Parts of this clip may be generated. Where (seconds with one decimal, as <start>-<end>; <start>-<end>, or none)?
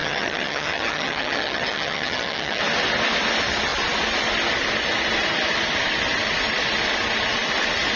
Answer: 0.0-2.6